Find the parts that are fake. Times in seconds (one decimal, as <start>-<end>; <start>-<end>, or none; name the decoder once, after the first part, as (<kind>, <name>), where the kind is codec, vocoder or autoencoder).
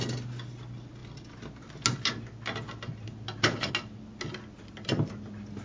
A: none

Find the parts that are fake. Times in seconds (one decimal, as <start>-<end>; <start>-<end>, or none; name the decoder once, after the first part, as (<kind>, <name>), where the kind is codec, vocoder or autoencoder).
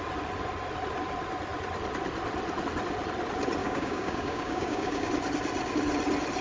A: 3.6-5.1 (codec, DAC)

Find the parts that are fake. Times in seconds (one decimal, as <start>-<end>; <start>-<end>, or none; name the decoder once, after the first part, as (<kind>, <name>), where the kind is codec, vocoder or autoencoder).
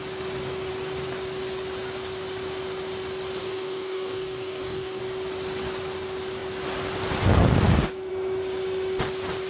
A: 3.4-5.0 (codec, DAC)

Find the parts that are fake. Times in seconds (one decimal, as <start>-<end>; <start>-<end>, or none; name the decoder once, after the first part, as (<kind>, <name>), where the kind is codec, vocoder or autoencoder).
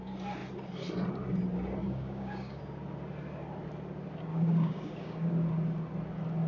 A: 1.8-2.6 (codec, DAC); 4.3-5.3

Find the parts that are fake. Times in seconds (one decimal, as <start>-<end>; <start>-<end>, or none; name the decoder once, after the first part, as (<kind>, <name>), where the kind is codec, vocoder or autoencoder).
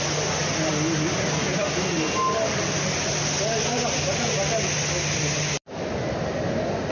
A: none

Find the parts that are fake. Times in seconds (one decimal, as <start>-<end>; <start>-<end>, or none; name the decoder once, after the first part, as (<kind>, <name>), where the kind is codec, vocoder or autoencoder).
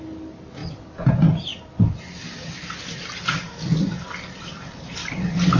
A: none